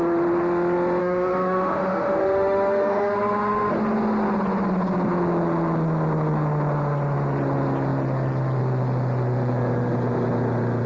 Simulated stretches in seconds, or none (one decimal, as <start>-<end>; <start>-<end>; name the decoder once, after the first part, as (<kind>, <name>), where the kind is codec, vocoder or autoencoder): 1.0-3.7 (autoencoder, DAC-VAE)